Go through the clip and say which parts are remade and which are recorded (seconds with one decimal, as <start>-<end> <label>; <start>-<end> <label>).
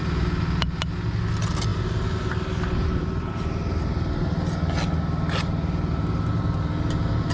0.0-7.3 recorded